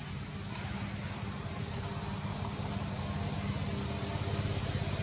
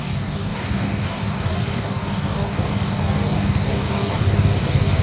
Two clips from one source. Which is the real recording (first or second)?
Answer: first